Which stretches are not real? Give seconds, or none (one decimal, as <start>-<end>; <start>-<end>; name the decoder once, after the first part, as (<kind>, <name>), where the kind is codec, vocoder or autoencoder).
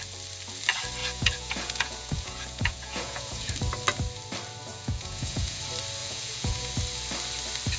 1.0-3.5 (vocoder, Vocos); 4.7-5.6; 6.0-6.7